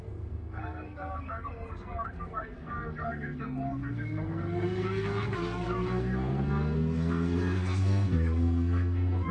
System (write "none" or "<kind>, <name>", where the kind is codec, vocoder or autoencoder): codec, SNAC